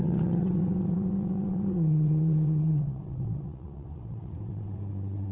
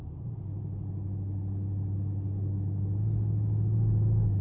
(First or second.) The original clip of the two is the second